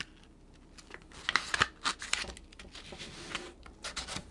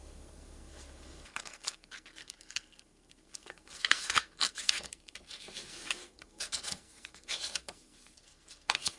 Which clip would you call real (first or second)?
first